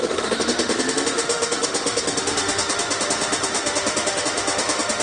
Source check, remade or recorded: remade